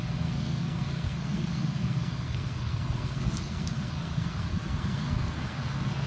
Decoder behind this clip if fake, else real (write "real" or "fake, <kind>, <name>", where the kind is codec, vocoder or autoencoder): fake, codec, SNAC